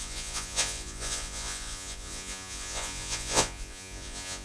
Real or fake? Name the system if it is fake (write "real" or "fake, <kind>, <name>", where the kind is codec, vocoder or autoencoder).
fake, vocoder, Vocos